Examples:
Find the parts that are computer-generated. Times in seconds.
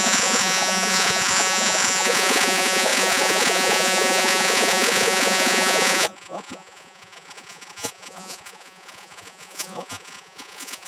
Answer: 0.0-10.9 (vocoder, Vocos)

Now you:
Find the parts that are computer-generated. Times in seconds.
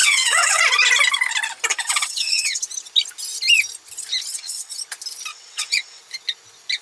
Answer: 0.0-0.6 (vocoder, WaveNeXt); 1.7-2.6; 4.3-4.8; 5.3-6.0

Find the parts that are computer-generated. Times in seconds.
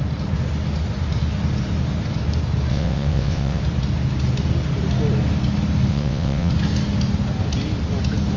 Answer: 2.7-3.6 (vocoder, WaveNeXt); 5.9-6.5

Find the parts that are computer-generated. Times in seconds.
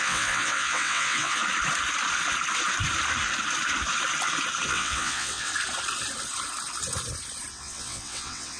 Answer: 0.0-1.4 (vocoder, WaveNeXt); 4.7-5.5; 7.5-8.6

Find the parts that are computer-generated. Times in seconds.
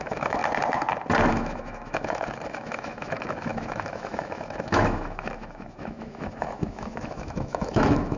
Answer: 0.0-0.4 (autoencoder, DAC-VAE); 1.3-8.2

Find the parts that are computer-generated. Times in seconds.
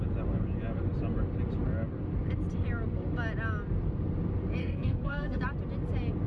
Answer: 4.6-5.4 (codec, SNAC)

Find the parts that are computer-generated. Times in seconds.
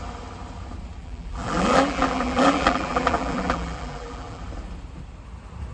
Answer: 1.0-4.4 (vocoder, BigVGAN v2)